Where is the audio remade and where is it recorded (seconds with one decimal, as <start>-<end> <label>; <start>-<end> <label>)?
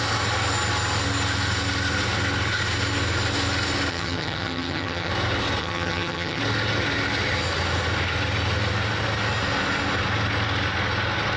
0.0-3.9 recorded; 3.9-5.1 remade; 5.1-5.6 recorded; 5.6-6.4 remade; 6.4-11.4 recorded